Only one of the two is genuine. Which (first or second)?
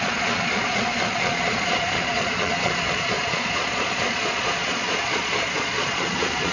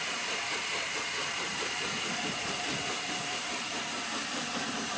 second